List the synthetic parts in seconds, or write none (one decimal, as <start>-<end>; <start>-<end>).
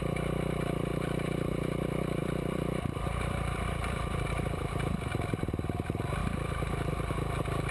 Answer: 0.9-1.5; 2.2-5.4; 6.2-6.9